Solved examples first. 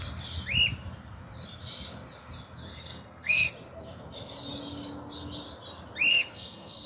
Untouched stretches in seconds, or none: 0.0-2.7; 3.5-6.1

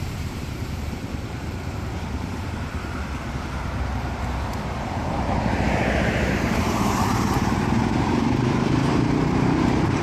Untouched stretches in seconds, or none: 2.7-6.3

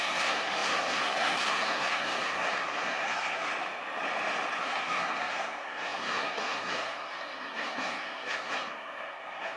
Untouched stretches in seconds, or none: 3.5-4.6

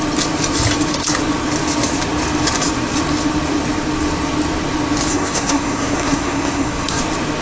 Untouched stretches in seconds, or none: 0.0-5.1; 7.0-7.4

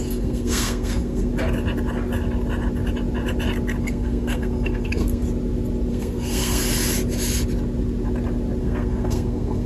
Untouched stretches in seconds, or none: 1.3-3.8; 5.2-5.9; 6.6-8.6

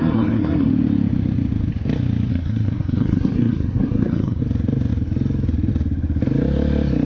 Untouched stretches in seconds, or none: 0.7-2.3; 4.4-7.0